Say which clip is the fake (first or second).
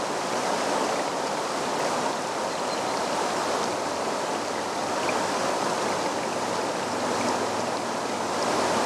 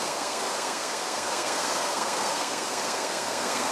second